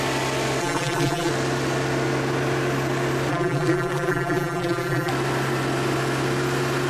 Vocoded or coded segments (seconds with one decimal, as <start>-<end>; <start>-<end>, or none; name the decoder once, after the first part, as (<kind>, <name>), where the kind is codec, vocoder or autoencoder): 0.6-1.3 (vocoder, BigVGAN v2); 3.3-5.1